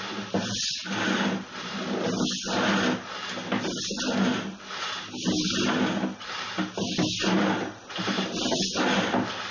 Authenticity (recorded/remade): recorded